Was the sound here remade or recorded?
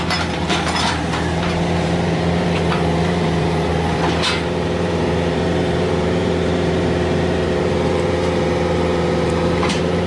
remade